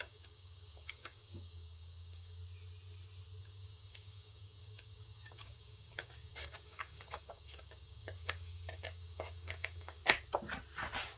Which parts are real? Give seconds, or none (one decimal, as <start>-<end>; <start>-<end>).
2.4-3.4; 10.0-11.2